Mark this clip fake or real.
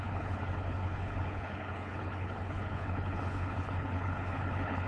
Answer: fake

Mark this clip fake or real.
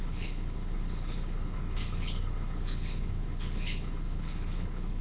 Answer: fake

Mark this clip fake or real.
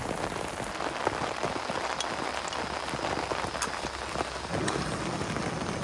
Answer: real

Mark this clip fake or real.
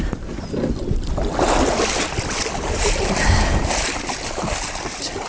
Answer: real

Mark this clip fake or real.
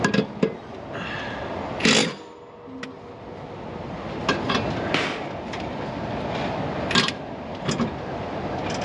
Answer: real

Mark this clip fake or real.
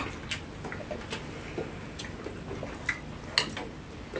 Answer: real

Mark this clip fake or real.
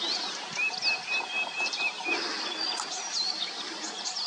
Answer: real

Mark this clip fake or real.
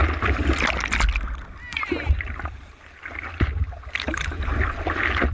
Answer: real